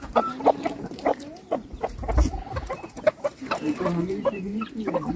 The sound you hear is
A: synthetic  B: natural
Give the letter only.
A